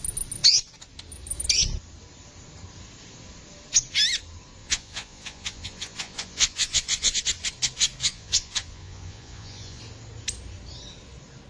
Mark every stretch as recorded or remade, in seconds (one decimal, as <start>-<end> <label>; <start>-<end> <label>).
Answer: 0.0-4.6 recorded; 4.6-7.2 remade; 7.2-8.0 recorded; 8.0-9.8 remade; 9.8-11.5 recorded